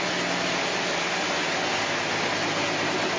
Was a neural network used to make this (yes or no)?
no